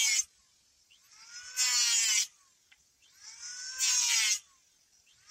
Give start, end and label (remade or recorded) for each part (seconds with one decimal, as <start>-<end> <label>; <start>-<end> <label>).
0.0-5.3 recorded